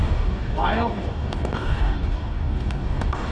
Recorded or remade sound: remade